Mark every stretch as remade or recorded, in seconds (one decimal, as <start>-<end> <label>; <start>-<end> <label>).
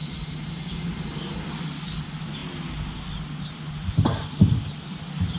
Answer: 0.0-0.7 remade; 0.7-5.4 recorded